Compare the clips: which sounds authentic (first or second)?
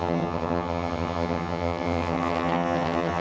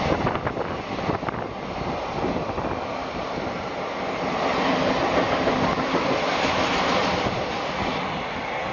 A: second